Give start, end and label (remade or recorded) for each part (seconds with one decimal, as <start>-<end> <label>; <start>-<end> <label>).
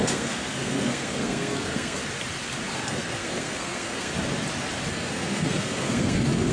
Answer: 0.0-2.0 remade; 2.0-2.7 recorded; 2.7-4.1 remade; 4.1-4.9 recorded; 4.9-6.5 remade